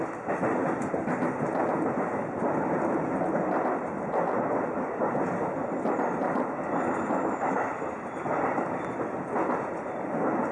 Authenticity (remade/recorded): recorded